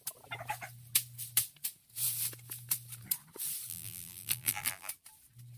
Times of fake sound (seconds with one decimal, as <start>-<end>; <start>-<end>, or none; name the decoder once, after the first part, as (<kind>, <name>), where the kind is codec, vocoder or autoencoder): 3.7-4.9 (vocoder, BigVGAN v2)